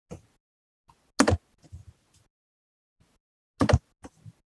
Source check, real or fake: real